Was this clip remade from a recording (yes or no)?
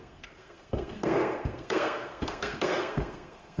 yes